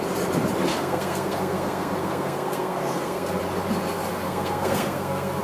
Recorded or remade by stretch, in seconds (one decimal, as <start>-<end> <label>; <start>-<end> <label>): 0.0-0.7 recorded; 0.7-3.4 remade; 3.4-4.1 recorded; 4.1-5.4 remade